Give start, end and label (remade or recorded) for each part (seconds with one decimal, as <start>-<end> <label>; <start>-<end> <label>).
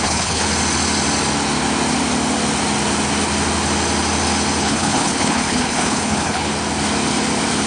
0.0-0.5 remade; 0.5-4.6 recorded; 4.6-6.5 remade; 6.5-7.7 recorded